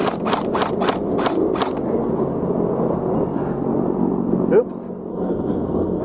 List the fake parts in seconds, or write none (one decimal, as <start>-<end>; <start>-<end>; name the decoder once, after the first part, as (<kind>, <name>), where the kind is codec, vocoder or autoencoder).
5.1-6.0 (codec, SNAC)